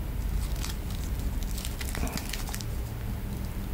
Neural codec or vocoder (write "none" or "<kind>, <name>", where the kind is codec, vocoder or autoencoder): none